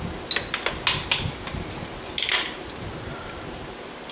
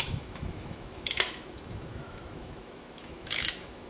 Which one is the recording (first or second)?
first